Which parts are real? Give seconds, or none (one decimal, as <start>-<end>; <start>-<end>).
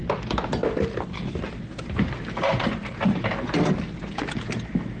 0.0-5.0